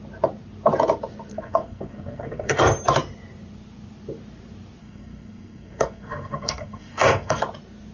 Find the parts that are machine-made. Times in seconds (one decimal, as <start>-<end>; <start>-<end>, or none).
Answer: 1.3-2.6; 4.8-7.4